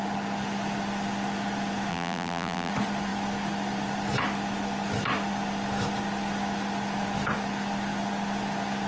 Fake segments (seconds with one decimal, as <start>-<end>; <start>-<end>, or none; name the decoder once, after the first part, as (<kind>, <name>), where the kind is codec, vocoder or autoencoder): 1.9-2.7 (vocoder, BigVGAN v2)